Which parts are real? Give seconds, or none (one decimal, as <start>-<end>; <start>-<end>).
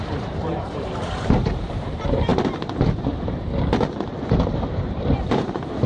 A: 2.3-4.7